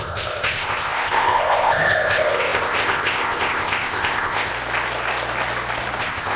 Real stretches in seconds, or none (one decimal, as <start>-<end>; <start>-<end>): 4.5-6.0